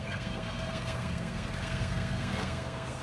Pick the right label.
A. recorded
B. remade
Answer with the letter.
B